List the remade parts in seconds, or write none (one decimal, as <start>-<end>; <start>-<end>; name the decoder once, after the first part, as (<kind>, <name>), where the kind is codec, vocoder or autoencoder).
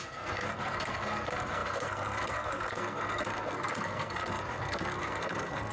0.0-5.7 (codec, SNAC)